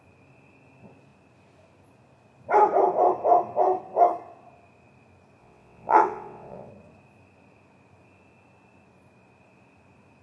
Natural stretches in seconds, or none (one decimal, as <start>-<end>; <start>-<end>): 0.0-5.4; 6.7-10.2